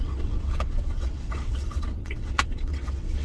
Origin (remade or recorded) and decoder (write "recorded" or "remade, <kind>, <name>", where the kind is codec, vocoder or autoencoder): remade, vocoder, WaveNeXt